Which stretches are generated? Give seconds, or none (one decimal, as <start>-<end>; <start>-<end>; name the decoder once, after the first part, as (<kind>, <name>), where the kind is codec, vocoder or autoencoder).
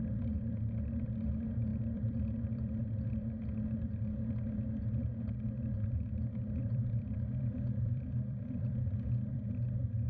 1.7-2.8 (vocoder, BigVGAN v2); 6.6-9.6